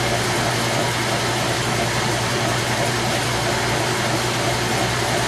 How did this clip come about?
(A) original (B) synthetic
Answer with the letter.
A